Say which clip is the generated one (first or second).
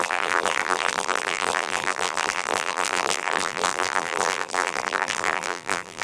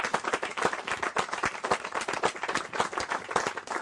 first